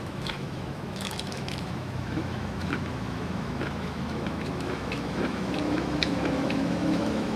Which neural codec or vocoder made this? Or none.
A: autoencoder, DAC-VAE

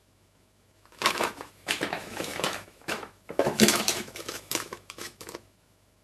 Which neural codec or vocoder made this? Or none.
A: autoencoder, DAC-VAE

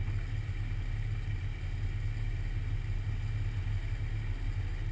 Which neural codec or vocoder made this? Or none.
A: none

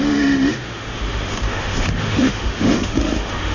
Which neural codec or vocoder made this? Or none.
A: autoencoder, DAC-VAE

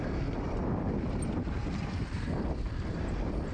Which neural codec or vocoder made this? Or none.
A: none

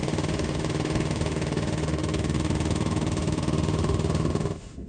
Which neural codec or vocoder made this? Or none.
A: autoencoder, DAC-VAE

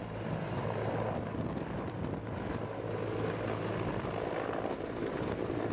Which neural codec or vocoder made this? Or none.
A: none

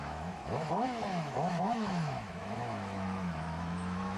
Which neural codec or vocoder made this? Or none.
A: autoencoder, DAC-VAE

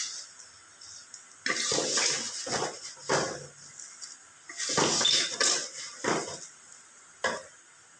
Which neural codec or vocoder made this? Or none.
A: none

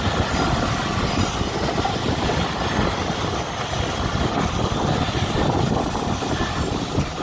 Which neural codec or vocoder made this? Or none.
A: none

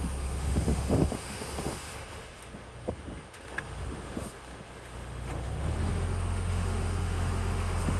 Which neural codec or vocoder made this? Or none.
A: autoencoder, DAC-VAE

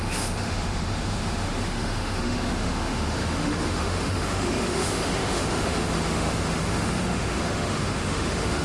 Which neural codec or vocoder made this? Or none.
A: autoencoder, DAC-VAE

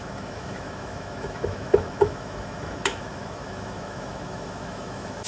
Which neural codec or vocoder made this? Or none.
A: autoencoder, DAC-VAE